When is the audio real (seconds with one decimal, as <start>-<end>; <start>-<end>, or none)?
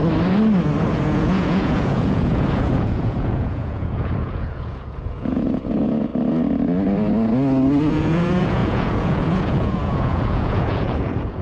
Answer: 0.0-0.9; 6.1-7.9